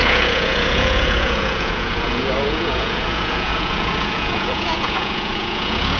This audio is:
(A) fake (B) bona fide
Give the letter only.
A